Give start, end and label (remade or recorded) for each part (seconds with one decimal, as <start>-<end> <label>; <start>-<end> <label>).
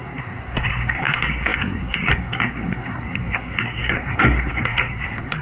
0.0-5.4 remade